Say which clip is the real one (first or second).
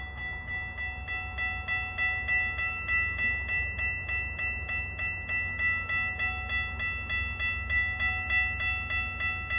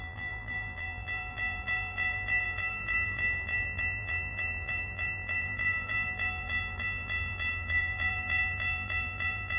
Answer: first